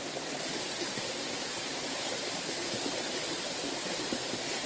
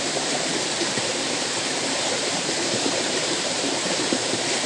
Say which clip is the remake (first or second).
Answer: second